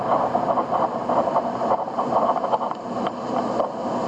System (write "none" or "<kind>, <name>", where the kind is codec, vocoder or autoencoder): none